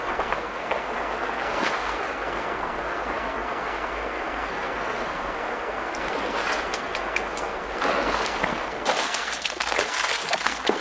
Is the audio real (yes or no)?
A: no